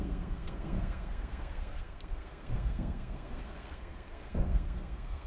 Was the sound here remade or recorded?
remade